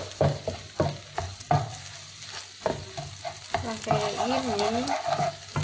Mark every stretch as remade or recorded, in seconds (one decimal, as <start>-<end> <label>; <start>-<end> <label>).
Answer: 0.0-5.6 recorded